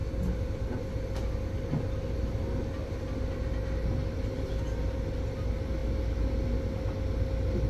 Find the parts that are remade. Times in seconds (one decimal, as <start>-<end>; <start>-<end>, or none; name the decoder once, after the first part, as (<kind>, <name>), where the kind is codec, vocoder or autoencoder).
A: none